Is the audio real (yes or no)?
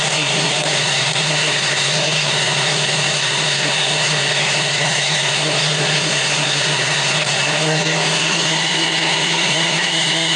no